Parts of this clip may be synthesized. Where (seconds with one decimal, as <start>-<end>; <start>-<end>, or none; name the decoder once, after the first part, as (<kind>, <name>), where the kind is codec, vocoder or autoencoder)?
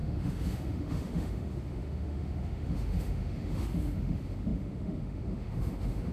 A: 0.0-6.1 (autoencoder, DAC-VAE)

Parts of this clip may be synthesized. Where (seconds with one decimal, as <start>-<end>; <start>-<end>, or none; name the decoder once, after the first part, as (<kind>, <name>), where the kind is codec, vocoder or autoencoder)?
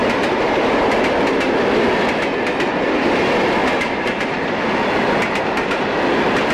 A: 3.6-5.4 (vocoder, BigVGAN v2)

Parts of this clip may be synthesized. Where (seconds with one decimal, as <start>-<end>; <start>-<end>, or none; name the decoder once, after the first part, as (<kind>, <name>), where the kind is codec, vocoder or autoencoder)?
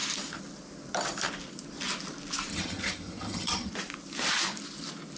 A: 2.5-3.7 (vocoder, HiFi-GAN)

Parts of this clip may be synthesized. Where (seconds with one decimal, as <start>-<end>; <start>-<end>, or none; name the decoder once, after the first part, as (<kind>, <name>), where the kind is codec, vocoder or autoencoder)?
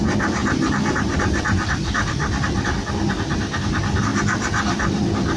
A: none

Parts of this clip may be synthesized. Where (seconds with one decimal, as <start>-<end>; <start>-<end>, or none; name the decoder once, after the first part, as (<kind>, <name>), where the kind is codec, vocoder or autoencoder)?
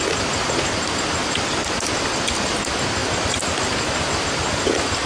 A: none